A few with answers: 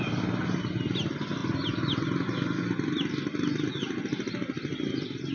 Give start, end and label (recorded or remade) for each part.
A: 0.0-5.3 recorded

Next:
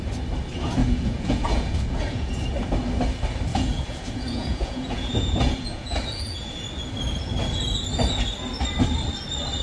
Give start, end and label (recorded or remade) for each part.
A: 0.0-0.8 recorded; 0.8-2.4 remade; 2.4-3.5 recorded; 3.5-6.6 remade; 6.6-9.6 recorded

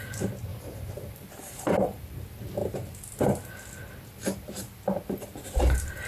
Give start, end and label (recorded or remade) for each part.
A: 0.0-0.5 recorded; 0.5-2.2 remade; 2.2-6.1 recorded

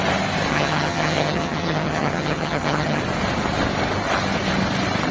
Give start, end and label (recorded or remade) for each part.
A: 0.0-0.5 recorded; 0.5-3.0 remade; 3.0-5.1 recorded

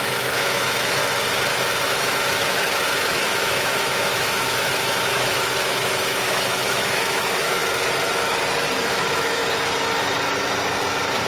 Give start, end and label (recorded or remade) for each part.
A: 0.0-1.0 remade; 1.0-1.8 recorded; 1.8-7.6 remade; 7.6-9.0 recorded; 9.0-9.4 remade; 9.4-11.3 recorded